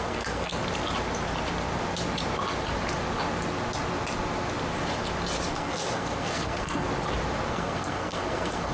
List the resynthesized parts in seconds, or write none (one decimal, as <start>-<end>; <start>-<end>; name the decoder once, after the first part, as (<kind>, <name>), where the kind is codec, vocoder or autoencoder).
0.0-0.6 (codec, SNAC); 5.5-6.9; 7.5-8.7